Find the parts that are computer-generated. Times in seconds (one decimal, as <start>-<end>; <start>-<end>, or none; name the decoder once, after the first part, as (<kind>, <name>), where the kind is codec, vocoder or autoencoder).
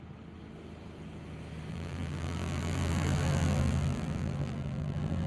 1.7-5.3 (vocoder, BigVGAN v2)